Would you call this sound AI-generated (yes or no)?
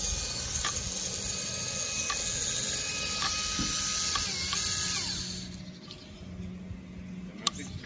no